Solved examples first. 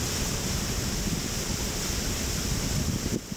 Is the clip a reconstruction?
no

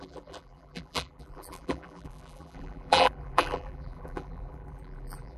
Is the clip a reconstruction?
yes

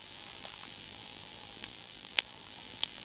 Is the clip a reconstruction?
yes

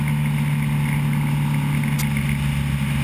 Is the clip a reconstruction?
no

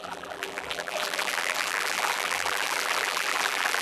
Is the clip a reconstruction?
yes